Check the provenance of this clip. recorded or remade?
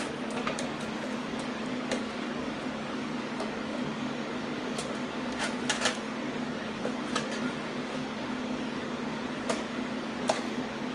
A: remade